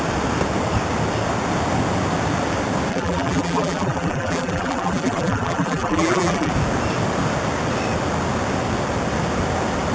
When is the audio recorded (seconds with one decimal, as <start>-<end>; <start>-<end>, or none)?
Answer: 0.0-2.9; 6.5-9.9